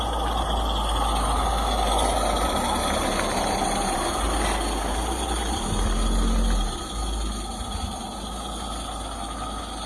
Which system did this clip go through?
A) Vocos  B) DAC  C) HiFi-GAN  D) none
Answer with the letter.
D